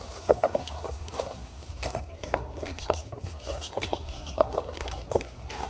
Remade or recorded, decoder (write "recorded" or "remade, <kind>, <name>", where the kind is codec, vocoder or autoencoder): remade, codec, SNAC